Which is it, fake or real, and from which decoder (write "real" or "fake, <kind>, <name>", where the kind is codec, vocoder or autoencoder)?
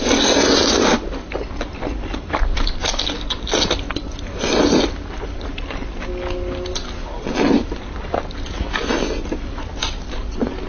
real